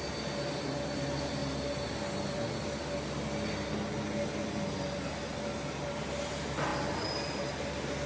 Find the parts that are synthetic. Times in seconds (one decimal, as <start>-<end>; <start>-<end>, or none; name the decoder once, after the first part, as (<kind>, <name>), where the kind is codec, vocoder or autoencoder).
none